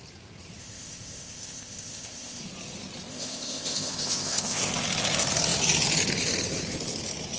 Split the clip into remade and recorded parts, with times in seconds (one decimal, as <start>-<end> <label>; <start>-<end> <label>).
0.0-0.6 recorded; 0.6-2.4 remade; 2.4-3.1 recorded; 3.1-4.7 remade; 4.7-7.4 recorded